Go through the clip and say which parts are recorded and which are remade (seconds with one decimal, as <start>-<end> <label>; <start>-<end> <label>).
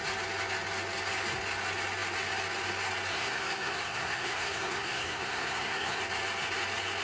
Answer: 0.0-3.1 recorded; 3.1-6.0 remade; 6.0-7.0 recorded